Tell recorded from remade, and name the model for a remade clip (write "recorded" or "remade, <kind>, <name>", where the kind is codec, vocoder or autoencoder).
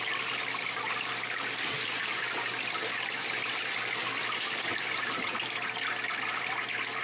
recorded